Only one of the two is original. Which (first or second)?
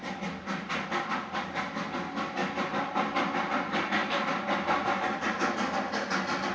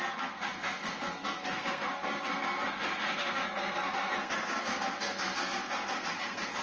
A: first